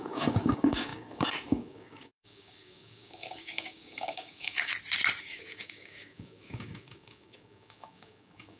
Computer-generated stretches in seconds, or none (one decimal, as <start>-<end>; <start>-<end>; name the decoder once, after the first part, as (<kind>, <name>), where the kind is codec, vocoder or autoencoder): 0.0-4.7 (codec, DAC); 5.2-8.6